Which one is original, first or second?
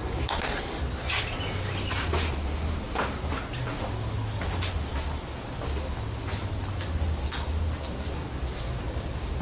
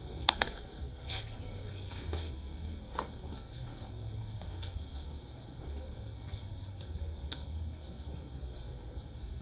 first